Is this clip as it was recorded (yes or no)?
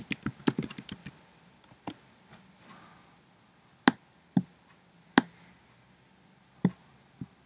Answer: yes